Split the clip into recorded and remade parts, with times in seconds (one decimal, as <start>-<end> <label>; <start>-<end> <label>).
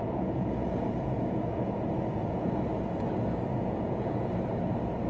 0.0-2.6 remade; 2.6-3.5 recorded; 3.5-4.3 remade; 4.3-5.1 recorded